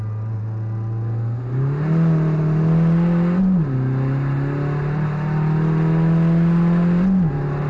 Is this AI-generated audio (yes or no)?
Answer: no